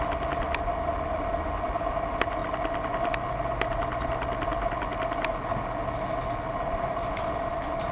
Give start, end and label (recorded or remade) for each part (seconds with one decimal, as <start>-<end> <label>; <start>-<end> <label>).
0.0-7.9 recorded